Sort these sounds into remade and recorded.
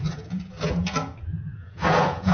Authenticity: remade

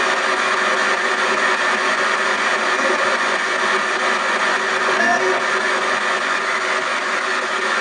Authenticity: remade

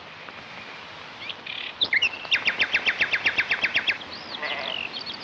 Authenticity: recorded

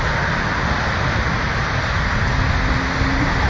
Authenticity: recorded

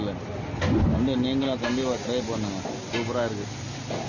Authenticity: recorded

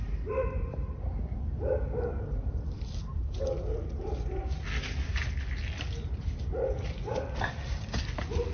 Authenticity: recorded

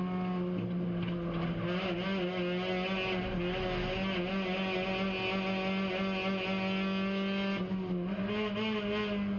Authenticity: recorded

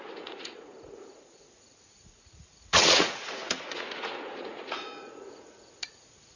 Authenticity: remade